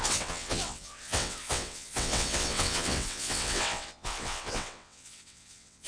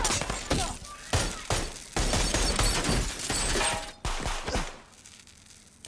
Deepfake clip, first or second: first